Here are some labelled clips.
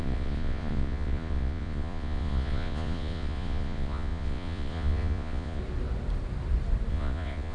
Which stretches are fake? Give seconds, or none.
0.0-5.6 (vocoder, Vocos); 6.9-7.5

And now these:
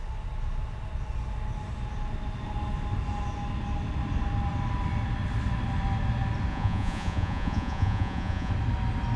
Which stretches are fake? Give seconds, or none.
6.5-8.5 (vocoder, Vocos)

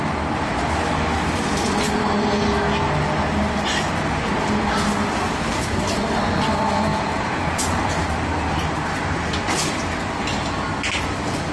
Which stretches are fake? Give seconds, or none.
6.9-7.7 (vocoder, Vocos)

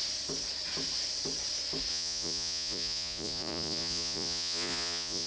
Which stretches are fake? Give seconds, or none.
1.9-5.3 (vocoder, Vocos)

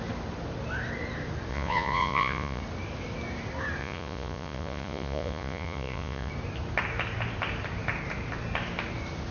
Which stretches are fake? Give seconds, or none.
1.5-2.6 (vocoder, Vocos); 3.8-6.3

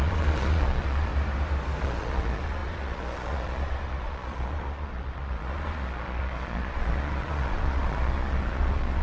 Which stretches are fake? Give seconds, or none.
0.0-1.1 (vocoder, Vocos); 1.8-9.0